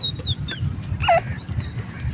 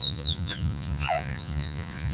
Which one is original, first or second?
first